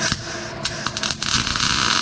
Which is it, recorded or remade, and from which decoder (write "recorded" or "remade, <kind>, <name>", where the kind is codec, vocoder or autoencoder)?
recorded